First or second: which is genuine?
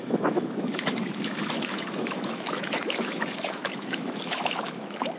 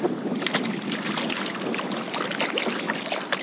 second